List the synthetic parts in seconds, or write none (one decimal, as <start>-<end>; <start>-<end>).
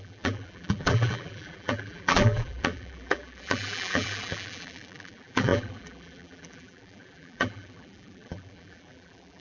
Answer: 0.0-9.4